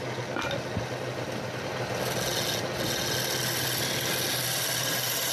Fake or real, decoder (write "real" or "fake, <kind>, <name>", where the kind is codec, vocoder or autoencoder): real